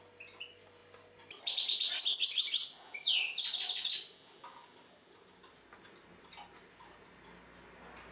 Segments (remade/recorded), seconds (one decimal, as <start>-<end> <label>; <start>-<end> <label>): 0.0-8.1 recorded